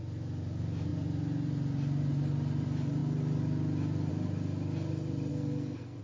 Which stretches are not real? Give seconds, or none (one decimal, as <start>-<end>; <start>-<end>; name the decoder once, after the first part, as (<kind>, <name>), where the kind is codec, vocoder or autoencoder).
5.3-6.0 (codec, SNAC)